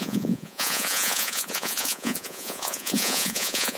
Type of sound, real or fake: fake